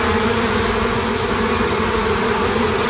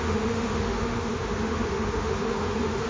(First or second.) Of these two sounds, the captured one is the first